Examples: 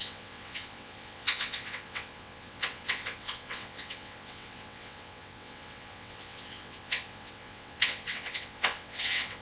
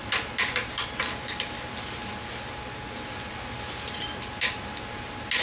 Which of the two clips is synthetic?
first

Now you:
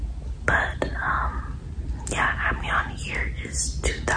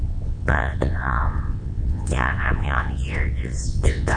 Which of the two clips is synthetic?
second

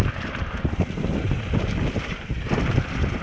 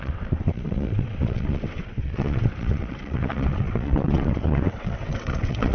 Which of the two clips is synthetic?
second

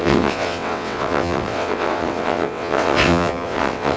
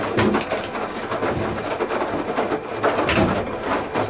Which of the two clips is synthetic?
first